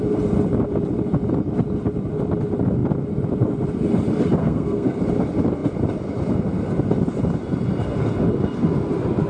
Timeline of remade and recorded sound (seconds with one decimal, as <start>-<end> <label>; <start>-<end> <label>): 0.0-4.4 recorded; 4.4-5.0 remade; 5.0-9.3 recorded